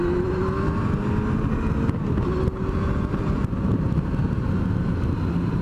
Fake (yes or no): no